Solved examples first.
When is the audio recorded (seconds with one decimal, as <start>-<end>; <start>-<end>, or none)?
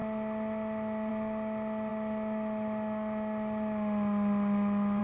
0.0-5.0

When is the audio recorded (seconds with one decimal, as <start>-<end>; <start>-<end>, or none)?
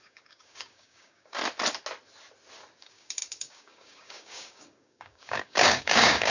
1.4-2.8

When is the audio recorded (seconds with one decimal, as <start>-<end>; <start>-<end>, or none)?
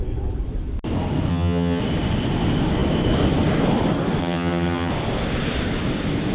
0.0-1.3; 1.8-4.2; 4.9-6.3